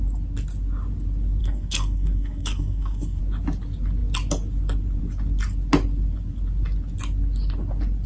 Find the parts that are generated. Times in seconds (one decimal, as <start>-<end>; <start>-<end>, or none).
1.4-3.2